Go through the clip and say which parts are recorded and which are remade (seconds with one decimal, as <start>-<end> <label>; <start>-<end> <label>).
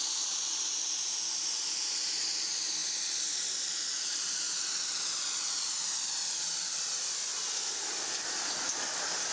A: 0.0-2.8 recorded; 2.8-7.3 remade; 7.3-9.3 recorded